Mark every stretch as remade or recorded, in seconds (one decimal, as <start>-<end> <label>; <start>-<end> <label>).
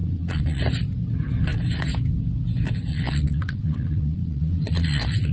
0.0-0.6 remade; 0.6-2.9 recorded; 2.9-5.3 remade